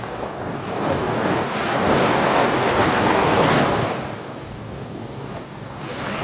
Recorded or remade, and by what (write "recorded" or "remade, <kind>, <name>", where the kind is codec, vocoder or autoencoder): remade, codec, DAC